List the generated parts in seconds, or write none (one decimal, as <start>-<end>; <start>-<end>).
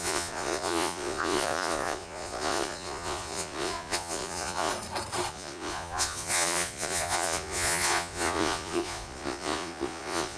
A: 0.0-4.7; 5.3-10.4